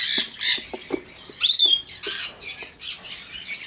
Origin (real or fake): real